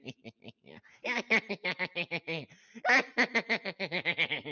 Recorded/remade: recorded